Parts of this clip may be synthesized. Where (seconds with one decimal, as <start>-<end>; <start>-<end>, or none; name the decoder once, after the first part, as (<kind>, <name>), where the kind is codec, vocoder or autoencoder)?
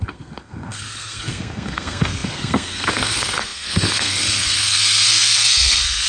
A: 0.0-6.1 (codec, SNAC)